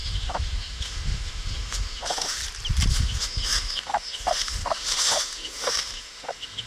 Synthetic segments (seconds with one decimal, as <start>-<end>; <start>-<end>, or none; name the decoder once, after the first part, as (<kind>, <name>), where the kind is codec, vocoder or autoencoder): 0.0-2.4 (autoencoder, DAC-VAE); 2.9-6.7